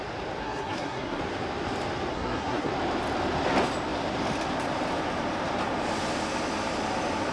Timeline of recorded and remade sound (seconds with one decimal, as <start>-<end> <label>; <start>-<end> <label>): 0.0-0.4 recorded; 0.4-1.2 remade; 1.2-2.1 recorded; 2.1-2.7 remade; 2.7-7.3 recorded